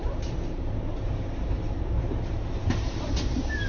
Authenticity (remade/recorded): remade